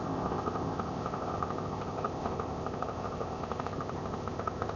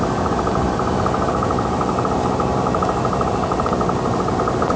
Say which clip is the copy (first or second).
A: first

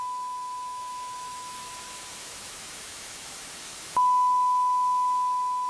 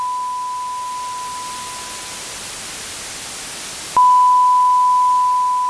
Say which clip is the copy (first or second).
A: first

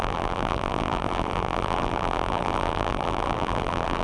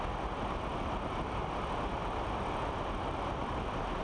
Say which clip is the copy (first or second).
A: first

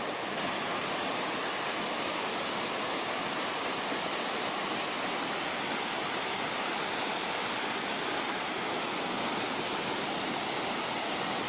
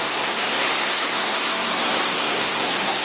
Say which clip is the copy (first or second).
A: second